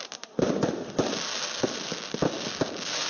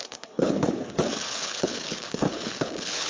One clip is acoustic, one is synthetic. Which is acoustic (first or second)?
first